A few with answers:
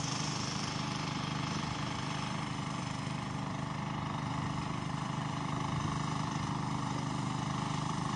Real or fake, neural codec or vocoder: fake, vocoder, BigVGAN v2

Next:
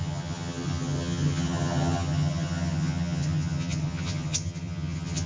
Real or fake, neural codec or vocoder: fake, vocoder, HiFi-GAN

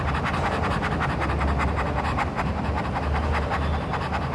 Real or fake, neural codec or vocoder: real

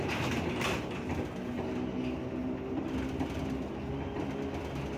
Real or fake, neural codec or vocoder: real